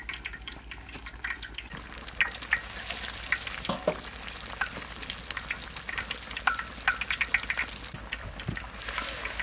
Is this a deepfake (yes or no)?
no